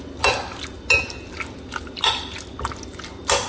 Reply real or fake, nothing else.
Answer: real